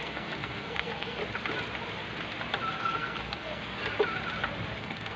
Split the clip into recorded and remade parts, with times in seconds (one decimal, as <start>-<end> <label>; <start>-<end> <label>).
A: 0.0-1.2 remade; 1.2-2.8 recorded; 2.8-3.8 remade; 3.8-4.8 recorded; 4.8-5.2 remade